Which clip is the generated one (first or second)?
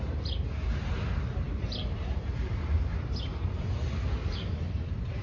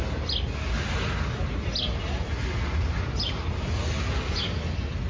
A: first